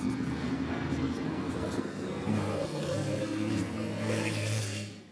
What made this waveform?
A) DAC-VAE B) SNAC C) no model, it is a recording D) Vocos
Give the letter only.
B